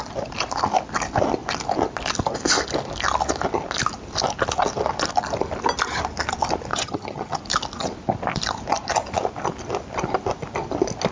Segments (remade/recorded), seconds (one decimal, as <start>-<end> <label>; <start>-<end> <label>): 0.0-6.7 recorded; 6.7-7.4 remade; 7.4-11.1 recorded